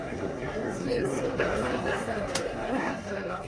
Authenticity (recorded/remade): remade